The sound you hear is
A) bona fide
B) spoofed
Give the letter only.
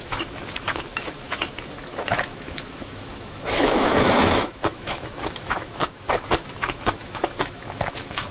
B